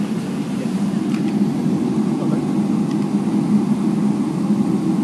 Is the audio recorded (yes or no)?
yes